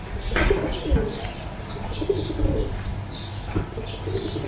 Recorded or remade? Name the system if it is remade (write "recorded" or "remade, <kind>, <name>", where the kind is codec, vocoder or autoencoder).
recorded